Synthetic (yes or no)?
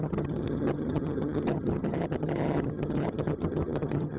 yes